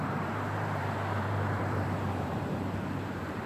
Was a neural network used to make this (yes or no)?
yes